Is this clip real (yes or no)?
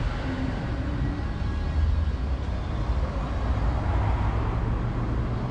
yes